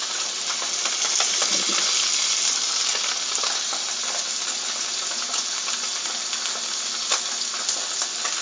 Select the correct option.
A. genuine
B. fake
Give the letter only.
A